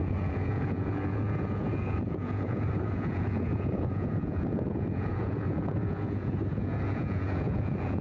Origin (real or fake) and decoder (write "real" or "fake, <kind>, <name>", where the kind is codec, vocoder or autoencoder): fake, vocoder, Vocos